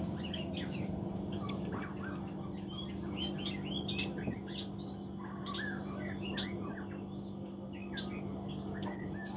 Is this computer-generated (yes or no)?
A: no